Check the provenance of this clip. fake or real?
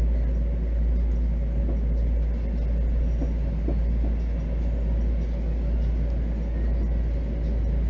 real